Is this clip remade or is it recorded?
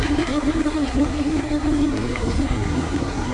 remade